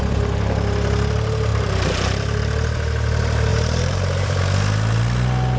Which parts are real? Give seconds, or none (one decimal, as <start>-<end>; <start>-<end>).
0.0-1.5; 2.4-3.5; 4.4-5.6